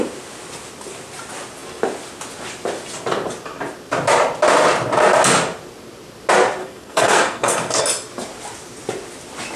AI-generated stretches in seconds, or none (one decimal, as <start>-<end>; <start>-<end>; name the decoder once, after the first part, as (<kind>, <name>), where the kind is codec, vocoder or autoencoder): 6.6-7.8 (codec, SNAC)